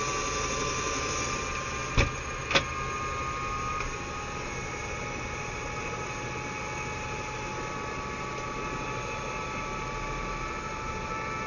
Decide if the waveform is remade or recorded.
recorded